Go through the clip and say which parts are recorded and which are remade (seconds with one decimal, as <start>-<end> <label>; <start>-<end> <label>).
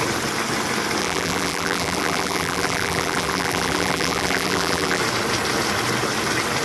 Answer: 0.0-1.0 recorded; 1.0-5.0 remade; 5.0-6.6 recorded